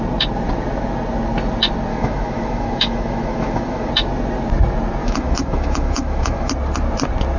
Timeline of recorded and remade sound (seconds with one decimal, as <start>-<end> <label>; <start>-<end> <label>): 0.0-1.9 recorded; 1.9-3.9 remade; 3.9-5.0 recorded; 5.0-6.5 remade; 6.5-7.4 recorded